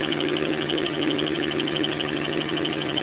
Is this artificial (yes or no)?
yes